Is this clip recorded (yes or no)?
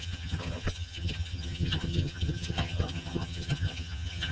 no